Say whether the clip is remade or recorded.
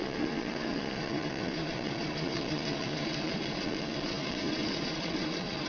remade